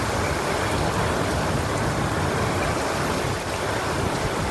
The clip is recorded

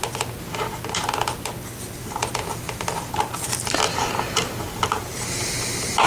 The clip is recorded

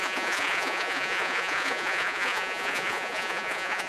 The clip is remade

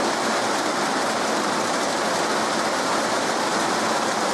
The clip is recorded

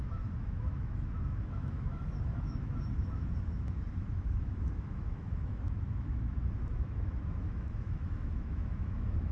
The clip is remade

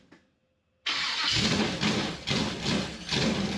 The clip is recorded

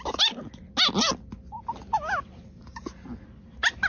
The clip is recorded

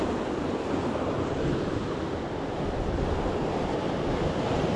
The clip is recorded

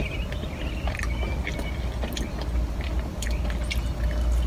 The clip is recorded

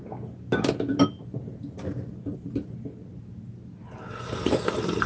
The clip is recorded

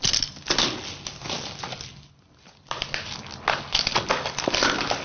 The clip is recorded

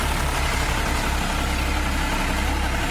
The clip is recorded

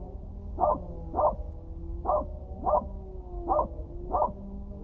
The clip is recorded